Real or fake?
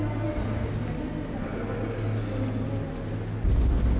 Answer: real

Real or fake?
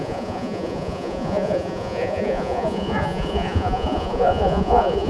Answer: fake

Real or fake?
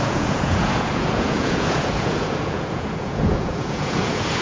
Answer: fake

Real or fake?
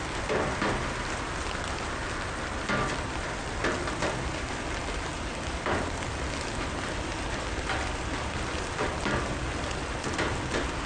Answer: real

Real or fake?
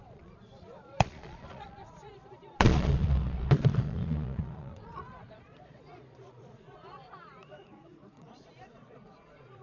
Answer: fake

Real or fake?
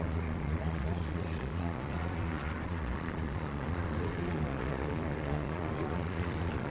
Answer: fake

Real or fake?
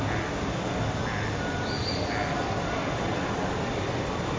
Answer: real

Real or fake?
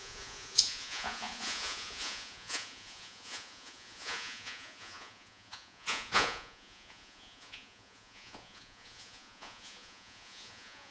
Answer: fake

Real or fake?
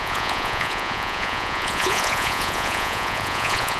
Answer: fake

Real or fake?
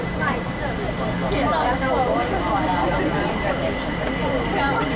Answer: real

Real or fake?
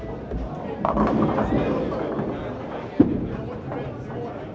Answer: real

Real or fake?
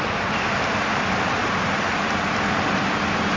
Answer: real